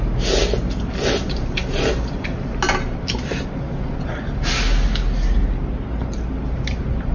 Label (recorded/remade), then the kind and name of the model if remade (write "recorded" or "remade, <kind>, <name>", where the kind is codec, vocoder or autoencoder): recorded